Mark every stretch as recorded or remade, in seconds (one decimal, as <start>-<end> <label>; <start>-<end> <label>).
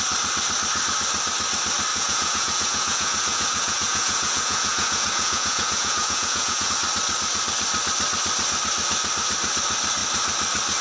0.0-1.9 recorded; 1.9-6.7 remade; 6.7-10.8 recorded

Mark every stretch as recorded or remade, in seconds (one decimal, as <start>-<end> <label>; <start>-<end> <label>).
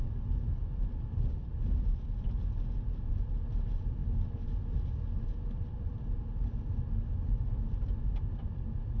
0.0-9.0 recorded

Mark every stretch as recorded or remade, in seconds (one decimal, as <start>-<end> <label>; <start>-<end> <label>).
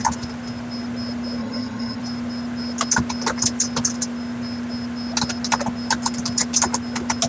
0.0-1.4 recorded; 1.4-2.0 remade; 2.0-7.3 recorded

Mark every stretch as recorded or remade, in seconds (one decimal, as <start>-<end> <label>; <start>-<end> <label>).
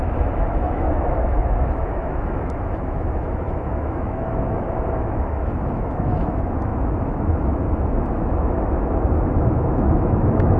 0.0-10.6 remade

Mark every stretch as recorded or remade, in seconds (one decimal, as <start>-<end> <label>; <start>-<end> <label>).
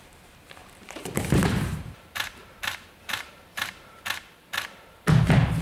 0.0-0.6 recorded; 0.6-4.0 remade; 4.0-5.6 recorded